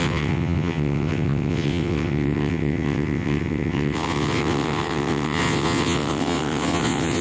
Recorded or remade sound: remade